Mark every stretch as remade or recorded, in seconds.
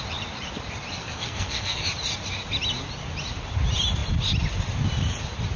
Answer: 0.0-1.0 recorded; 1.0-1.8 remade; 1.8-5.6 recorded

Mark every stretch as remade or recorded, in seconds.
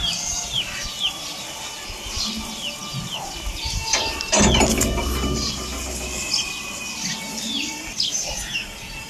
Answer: 0.0-9.1 recorded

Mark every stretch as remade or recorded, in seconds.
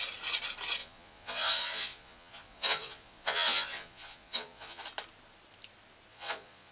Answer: 0.0-0.8 recorded; 0.8-4.8 remade; 4.8-6.1 recorded; 6.1-6.7 remade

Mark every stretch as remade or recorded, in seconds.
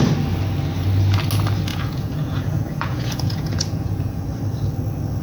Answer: 0.0-1.7 recorded; 1.7-4.2 remade; 4.2-5.2 recorded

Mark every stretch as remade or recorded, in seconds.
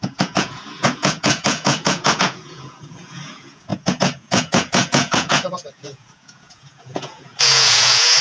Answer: 0.0-8.2 remade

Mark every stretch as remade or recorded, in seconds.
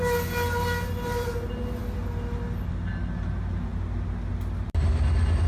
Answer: 0.0-5.5 recorded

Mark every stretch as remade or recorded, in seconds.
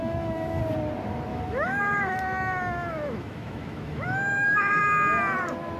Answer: 0.0-0.6 remade; 0.6-1.3 recorded; 1.3-4.8 remade; 4.8-5.8 recorded